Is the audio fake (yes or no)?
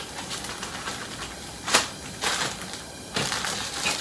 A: no